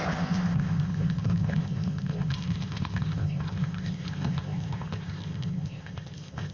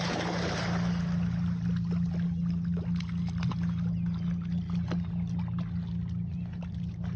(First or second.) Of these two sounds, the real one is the second